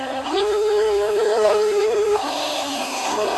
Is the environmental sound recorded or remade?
remade